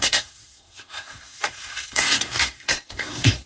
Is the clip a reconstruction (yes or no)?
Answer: yes